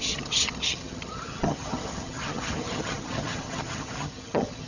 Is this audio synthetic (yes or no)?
yes